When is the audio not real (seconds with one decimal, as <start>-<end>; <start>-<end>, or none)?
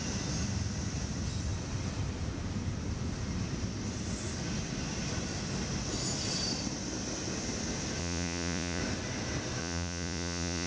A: 8.0-8.8; 9.6-10.7